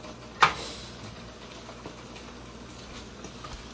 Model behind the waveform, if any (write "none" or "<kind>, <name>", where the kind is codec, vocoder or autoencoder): none